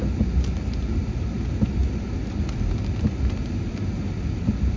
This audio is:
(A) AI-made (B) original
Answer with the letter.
B